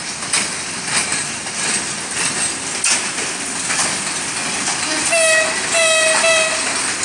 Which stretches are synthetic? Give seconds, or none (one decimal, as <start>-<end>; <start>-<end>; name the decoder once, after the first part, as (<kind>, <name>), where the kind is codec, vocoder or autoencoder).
none